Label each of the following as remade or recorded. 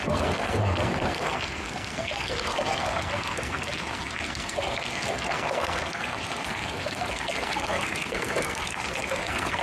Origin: remade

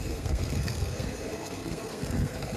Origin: remade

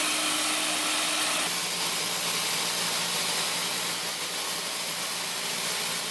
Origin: recorded